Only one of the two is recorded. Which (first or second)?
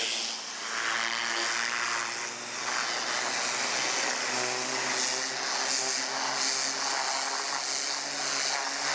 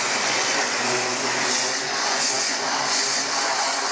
first